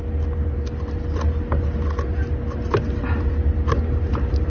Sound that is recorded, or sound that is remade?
recorded